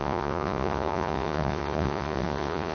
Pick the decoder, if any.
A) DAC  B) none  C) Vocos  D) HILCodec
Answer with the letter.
C